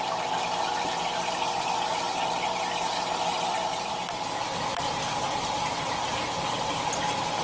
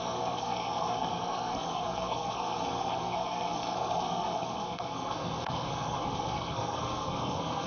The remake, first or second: second